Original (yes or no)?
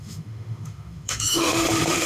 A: no